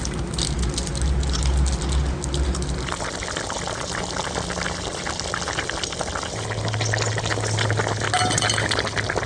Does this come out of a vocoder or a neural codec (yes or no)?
no